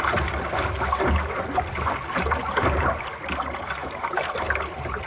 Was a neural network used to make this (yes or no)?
no